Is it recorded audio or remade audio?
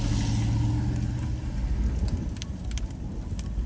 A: recorded